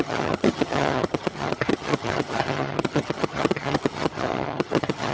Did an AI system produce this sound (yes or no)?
yes